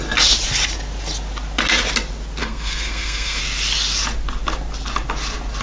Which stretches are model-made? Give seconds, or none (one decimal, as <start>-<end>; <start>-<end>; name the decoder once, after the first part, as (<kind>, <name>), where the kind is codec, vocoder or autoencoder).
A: 2.4-3.4 (codec, SNAC)